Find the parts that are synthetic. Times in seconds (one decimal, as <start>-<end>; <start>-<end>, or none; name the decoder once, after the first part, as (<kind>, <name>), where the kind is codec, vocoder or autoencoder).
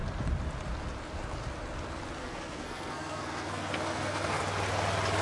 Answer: 2.2-4.4 (codec, SNAC)